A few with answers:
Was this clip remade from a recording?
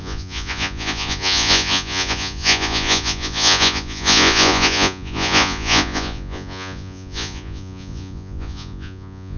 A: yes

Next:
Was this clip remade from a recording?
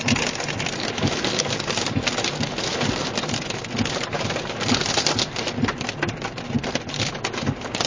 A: no